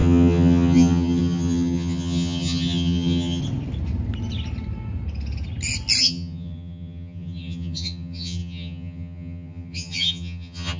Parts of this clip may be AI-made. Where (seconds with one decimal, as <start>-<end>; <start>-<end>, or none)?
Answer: 0.0-3.4; 6.0-10.8